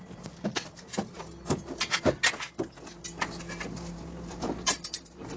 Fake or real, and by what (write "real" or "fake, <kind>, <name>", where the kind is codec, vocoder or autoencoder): real